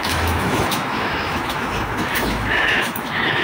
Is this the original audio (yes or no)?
no